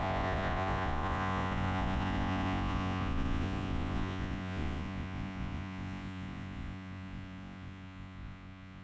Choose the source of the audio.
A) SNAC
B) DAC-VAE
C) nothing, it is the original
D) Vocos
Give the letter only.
D